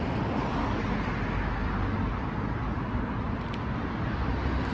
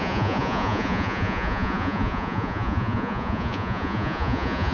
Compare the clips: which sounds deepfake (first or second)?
second